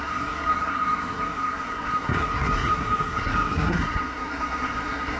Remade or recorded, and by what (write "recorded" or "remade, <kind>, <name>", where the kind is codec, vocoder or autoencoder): remade, codec, SNAC